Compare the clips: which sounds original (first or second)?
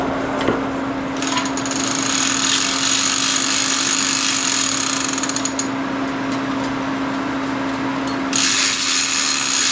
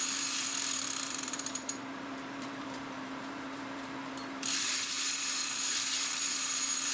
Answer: first